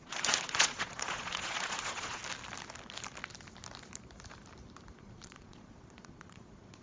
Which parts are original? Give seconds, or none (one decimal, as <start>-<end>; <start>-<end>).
2.2-5.0